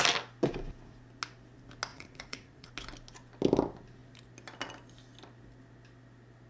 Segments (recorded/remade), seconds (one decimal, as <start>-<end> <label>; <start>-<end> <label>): 0.0-1.9 recorded; 1.9-2.7 remade; 2.7-6.5 recorded